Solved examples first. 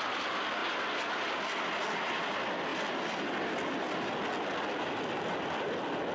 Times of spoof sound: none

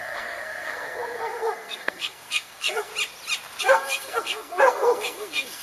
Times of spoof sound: 0.0-2.9 (codec, SNAC); 3.6-5.6

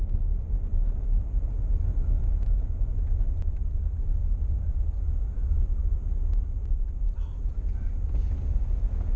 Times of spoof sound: none

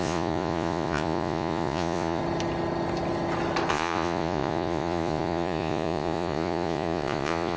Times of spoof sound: 0.0-2.2 (vocoder, Vocos); 3.7-7.6